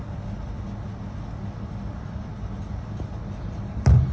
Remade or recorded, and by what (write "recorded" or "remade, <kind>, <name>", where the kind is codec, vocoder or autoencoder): recorded